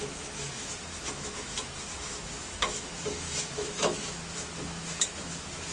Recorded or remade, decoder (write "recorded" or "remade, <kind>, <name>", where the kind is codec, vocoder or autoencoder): remade, autoencoder, DAC-VAE